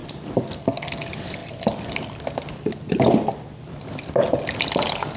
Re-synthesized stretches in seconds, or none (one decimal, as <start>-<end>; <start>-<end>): none